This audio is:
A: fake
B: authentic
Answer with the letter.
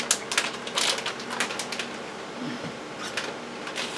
B